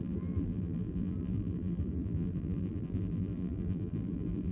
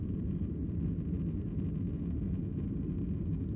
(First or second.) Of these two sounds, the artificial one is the first